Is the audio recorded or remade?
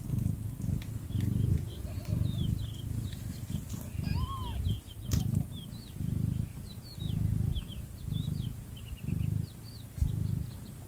recorded